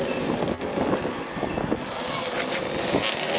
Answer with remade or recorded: recorded